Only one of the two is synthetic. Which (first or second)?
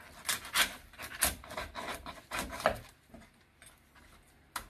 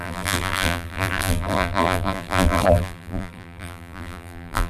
second